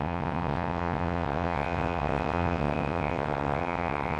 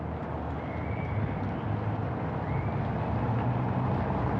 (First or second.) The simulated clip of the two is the first